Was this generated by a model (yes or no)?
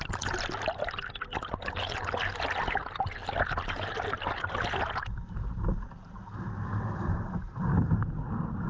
no